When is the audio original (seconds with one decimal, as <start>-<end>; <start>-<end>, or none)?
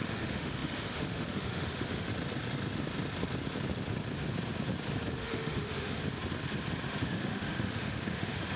2.1-5.2; 6.0-7.0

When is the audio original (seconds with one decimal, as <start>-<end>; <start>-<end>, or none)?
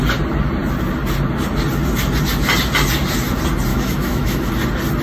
0.0-3.7; 4.5-5.0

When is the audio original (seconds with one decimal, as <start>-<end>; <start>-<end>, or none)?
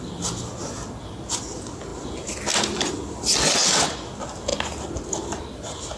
0.0-6.0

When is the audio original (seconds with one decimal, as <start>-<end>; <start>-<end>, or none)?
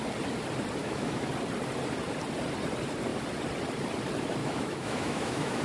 0.0-0.8; 1.3-4.4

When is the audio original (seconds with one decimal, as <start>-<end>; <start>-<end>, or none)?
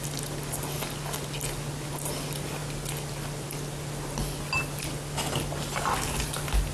0.0-6.7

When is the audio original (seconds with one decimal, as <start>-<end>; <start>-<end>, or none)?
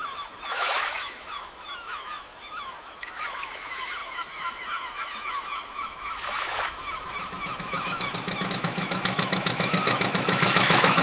none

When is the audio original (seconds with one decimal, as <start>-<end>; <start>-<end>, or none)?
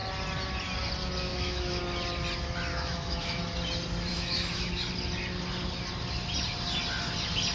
0.0-1.3; 1.8-2.7; 3.4-4.1; 4.7-7.5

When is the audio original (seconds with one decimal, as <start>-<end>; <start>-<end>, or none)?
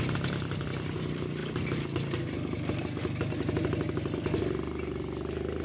0.0-5.6